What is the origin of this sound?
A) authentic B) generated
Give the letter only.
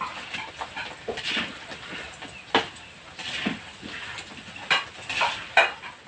A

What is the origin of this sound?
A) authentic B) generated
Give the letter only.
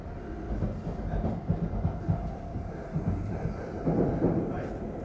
A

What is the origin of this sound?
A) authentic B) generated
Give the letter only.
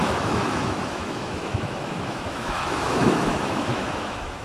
B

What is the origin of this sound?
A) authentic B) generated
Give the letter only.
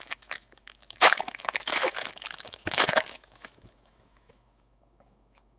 B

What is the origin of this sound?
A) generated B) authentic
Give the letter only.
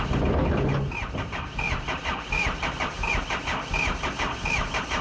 B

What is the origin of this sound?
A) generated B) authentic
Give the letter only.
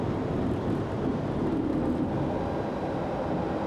B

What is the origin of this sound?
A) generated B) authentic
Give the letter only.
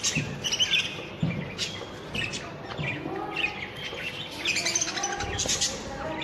B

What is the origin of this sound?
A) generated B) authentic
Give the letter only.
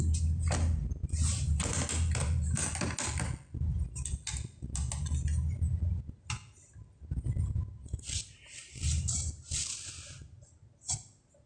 B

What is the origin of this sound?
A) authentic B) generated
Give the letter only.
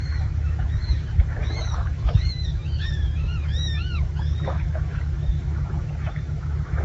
B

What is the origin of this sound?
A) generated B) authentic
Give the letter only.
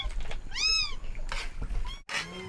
B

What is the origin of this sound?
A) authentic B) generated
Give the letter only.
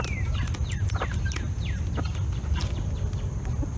A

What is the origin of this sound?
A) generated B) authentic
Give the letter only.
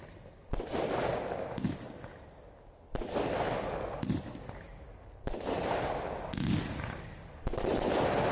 B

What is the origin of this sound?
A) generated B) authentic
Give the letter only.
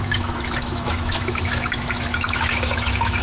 A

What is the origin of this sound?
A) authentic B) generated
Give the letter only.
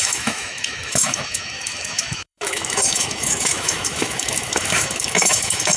B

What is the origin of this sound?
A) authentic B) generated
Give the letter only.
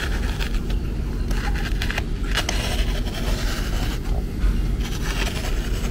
A